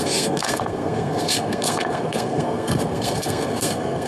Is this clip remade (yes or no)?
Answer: yes